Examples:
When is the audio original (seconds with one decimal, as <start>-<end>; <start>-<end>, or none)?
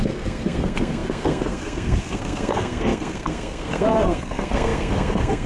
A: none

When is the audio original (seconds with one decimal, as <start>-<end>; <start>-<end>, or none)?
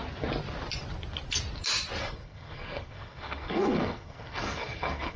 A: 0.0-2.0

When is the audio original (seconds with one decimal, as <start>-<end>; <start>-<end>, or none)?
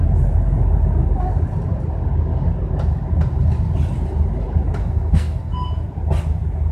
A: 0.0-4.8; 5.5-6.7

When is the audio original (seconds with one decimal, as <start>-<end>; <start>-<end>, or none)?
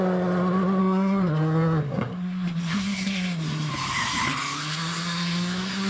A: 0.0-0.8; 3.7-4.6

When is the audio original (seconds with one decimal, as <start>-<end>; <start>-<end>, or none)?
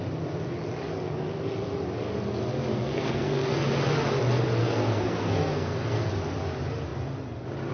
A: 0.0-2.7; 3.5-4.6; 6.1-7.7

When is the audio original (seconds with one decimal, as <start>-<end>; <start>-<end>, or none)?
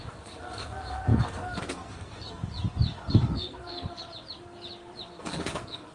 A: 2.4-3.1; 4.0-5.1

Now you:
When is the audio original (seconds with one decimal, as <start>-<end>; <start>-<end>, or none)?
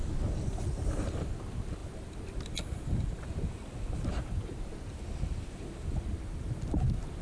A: 0.0-7.2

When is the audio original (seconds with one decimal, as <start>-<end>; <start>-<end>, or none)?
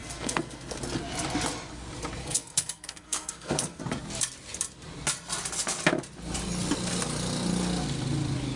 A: 0.8-2.2; 3.8-8.6